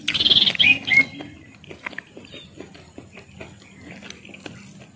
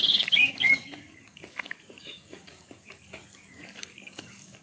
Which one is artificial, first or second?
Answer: second